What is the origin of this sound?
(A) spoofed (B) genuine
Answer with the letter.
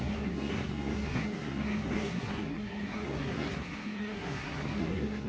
A